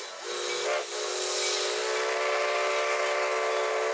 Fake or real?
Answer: real